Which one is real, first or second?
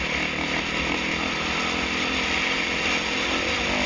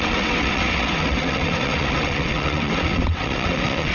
first